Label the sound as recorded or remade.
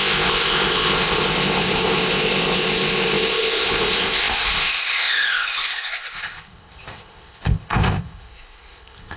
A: remade